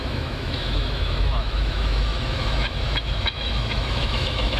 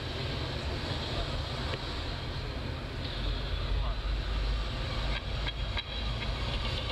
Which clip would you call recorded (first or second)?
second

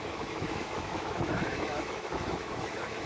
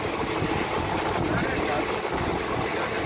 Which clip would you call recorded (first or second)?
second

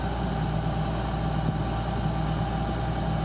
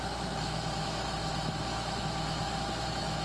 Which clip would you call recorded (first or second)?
first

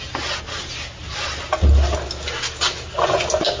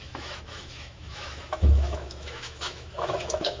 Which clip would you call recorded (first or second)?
first